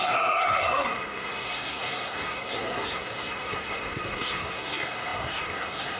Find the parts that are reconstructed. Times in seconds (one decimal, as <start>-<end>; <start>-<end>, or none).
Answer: 0.0-6.0